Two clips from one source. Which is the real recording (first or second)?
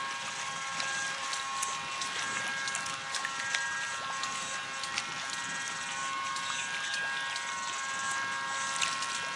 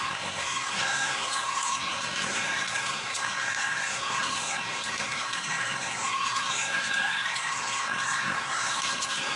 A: first